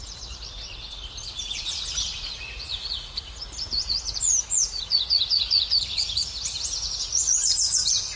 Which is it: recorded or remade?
remade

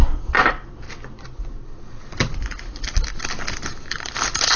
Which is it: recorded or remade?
recorded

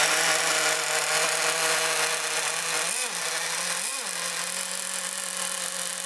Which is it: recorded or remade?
recorded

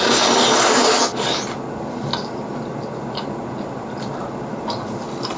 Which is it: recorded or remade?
recorded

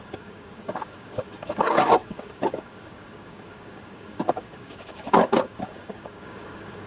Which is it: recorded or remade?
remade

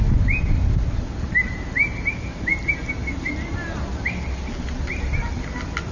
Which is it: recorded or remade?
recorded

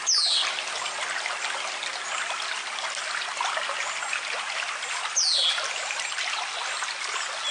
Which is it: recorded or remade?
recorded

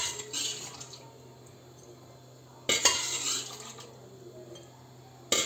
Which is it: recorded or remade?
recorded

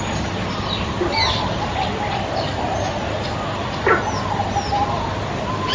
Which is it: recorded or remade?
recorded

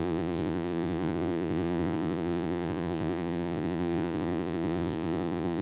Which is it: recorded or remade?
remade